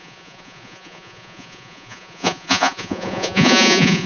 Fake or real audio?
fake